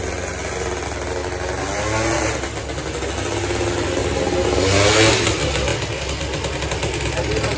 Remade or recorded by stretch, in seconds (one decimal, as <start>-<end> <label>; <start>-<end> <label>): 0.0-7.6 recorded